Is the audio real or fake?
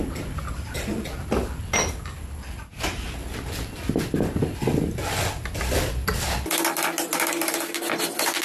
real